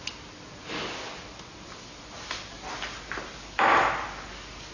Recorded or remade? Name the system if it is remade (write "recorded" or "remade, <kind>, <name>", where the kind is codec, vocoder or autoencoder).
recorded